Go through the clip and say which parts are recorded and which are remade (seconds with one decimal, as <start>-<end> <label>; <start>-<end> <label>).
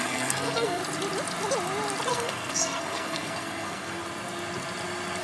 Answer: 0.0-0.8 remade; 0.8-2.1 recorded; 2.1-4.0 remade; 4.0-5.2 recorded